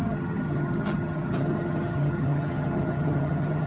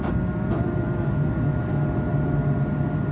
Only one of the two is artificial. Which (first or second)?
first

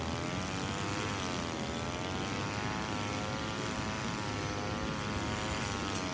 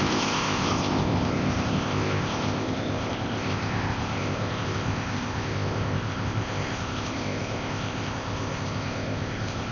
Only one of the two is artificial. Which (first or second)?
second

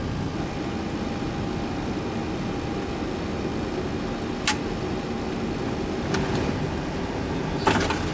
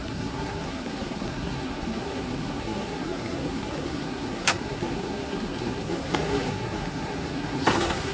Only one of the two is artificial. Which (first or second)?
second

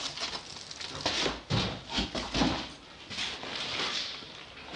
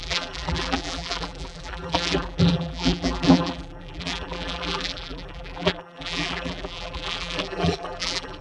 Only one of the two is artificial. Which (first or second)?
second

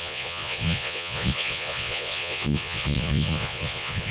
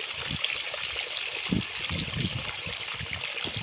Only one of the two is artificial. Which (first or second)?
first